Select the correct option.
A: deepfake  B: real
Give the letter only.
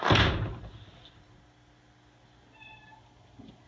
B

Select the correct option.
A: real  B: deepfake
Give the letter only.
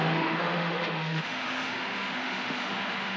B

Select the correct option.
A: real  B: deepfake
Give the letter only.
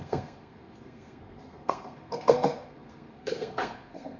B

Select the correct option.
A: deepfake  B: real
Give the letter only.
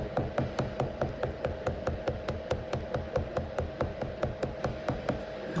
B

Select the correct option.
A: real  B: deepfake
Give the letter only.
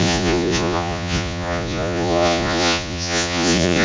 B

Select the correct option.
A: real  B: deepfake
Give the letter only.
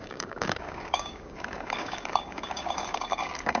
B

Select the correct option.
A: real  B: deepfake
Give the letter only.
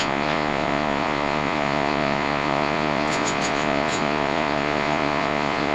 B